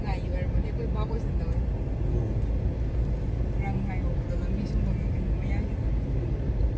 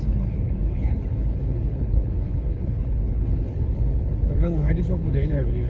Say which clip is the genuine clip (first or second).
first